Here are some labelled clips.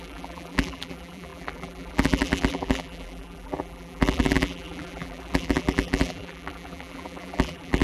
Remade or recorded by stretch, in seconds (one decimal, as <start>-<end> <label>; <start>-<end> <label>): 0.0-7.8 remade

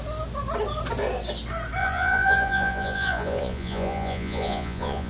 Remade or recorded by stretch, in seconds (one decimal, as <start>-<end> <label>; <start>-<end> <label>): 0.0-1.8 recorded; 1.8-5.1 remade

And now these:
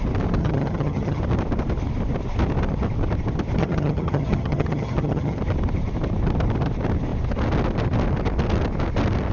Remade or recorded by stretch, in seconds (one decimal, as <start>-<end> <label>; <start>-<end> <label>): 0.0-0.4 recorded; 0.4-1.2 remade; 1.2-3.6 recorded; 3.6-5.4 remade; 5.4-9.3 recorded

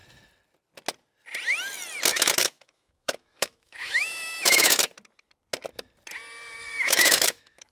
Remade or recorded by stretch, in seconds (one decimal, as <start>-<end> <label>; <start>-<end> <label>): 0.0-2.1 recorded; 2.1-4.8 remade; 4.8-6.6 recorded; 6.6-7.7 remade